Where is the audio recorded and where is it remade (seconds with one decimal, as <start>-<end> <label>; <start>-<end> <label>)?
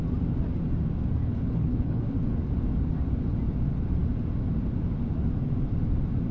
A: 0.0-1.2 recorded; 1.2-2.0 remade; 2.0-6.3 recorded